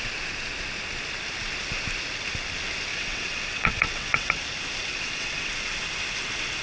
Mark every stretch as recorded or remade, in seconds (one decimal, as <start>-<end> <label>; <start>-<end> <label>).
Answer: 0.0-2.9 recorded; 2.9-4.4 remade; 4.4-4.9 recorded; 4.9-5.5 remade; 5.5-6.6 recorded